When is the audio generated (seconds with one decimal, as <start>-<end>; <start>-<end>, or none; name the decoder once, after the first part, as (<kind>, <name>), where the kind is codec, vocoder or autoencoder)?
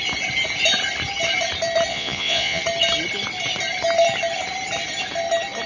1.9-2.6 (vocoder, Vocos)